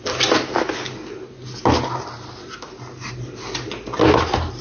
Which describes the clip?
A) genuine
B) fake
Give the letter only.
A